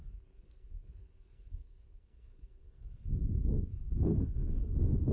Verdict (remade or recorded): remade